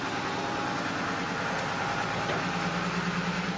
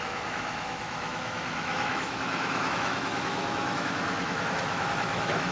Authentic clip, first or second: first